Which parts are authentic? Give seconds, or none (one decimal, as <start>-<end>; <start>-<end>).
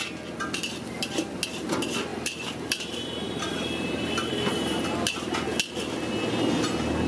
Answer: 0.0-2.1; 4.8-7.1